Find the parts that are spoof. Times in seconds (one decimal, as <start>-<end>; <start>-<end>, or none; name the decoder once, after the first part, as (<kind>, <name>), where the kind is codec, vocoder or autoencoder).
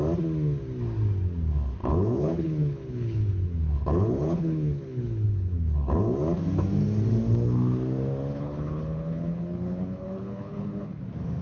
1.8-6.0 (codec, HILCodec); 8.3-11.0